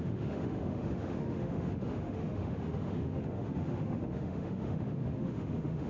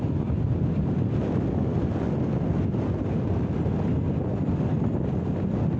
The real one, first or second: second